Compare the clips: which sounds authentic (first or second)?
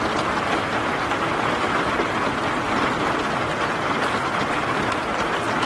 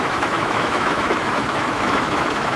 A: first